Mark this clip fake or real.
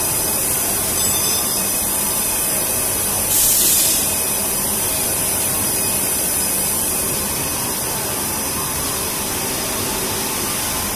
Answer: fake